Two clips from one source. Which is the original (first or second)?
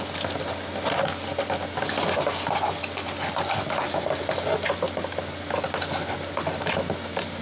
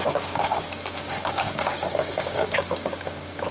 first